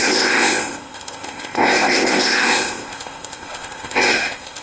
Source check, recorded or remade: remade